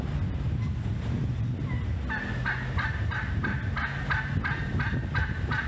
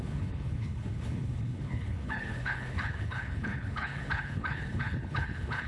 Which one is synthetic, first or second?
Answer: second